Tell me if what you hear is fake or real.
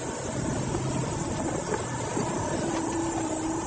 real